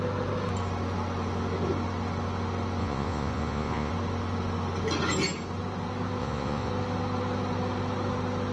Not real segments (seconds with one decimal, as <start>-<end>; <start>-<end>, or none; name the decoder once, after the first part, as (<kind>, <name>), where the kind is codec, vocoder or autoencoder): 2.8-3.9 (vocoder, Vocos); 6.2-6.7